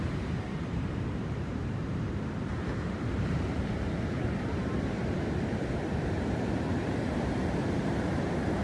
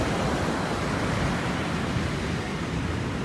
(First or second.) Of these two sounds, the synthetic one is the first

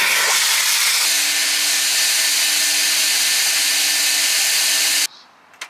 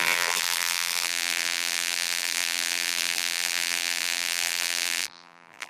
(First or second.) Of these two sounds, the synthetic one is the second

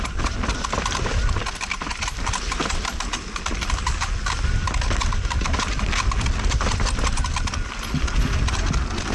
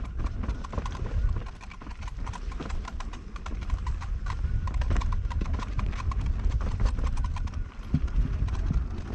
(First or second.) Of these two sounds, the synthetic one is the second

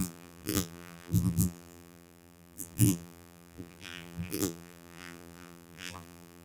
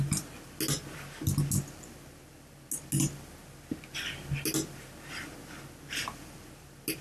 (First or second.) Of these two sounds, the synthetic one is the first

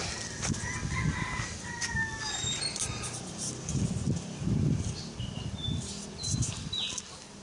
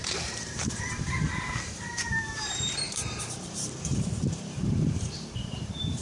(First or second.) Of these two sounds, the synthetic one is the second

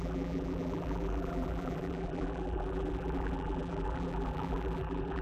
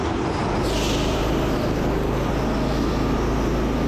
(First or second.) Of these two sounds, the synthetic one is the first